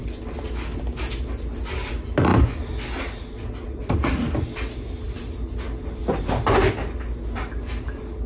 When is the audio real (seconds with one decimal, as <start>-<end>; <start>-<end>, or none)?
0.0-8.3